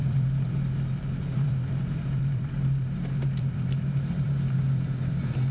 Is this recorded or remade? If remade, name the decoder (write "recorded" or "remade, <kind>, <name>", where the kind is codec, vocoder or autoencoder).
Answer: remade, vocoder, BigVGAN v2